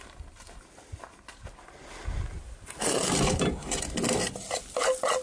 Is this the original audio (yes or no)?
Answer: yes